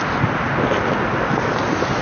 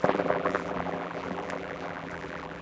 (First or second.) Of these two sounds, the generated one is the second